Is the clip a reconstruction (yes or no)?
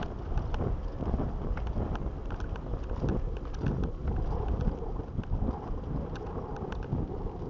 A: no